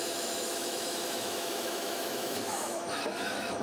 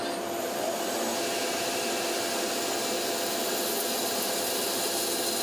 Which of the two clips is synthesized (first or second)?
first